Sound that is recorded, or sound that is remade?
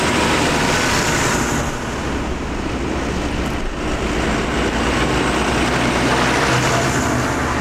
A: recorded